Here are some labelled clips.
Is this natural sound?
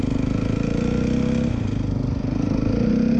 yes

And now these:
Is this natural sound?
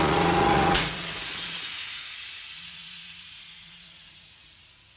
no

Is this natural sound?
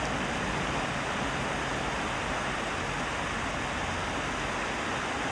yes